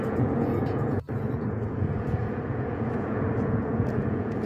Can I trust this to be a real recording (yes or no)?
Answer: no